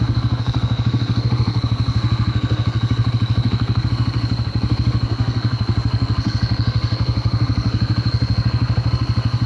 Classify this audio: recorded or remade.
remade